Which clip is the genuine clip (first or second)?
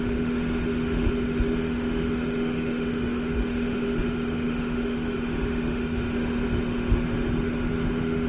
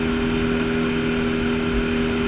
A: second